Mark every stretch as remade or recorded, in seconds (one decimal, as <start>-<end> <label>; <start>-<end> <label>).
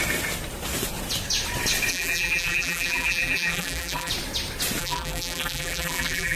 0.0-1.9 recorded; 1.9-4.1 remade; 4.1-4.8 recorded; 4.8-6.4 remade